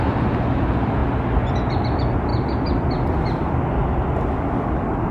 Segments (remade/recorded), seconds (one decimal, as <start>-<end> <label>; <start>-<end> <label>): 0.0-5.1 recorded